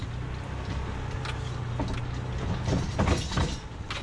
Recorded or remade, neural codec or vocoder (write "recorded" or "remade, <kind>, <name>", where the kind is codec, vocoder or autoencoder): recorded